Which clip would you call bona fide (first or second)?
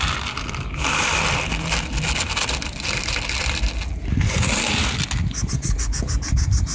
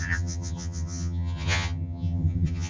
first